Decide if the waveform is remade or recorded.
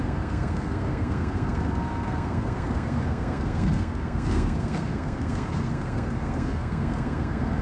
remade